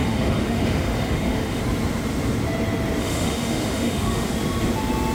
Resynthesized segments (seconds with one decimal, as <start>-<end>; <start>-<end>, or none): 0.0-1.6; 3.0-4.3